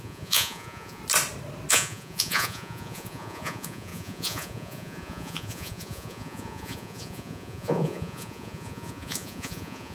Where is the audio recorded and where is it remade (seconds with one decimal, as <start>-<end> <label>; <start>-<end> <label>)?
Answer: 0.0-1.0 remade; 1.0-1.7 recorded; 1.7-9.9 remade